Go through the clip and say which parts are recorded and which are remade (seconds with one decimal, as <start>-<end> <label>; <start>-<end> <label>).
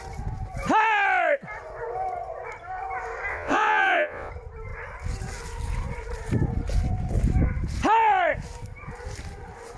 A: 0.0-3.3 recorded; 3.3-4.3 remade; 4.3-9.8 recorded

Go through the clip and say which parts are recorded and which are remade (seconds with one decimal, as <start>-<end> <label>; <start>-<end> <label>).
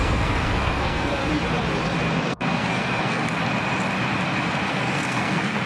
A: 0.0-1.2 remade; 1.2-2.2 recorded; 2.2-3.2 remade; 3.2-4.7 recorded; 4.7-5.7 remade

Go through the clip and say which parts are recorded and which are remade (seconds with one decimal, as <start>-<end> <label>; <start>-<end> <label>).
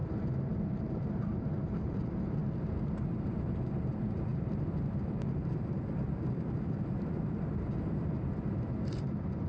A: 0.0-2.4 remade; 2.4-3.2 recorded; 3.2-9.5 remade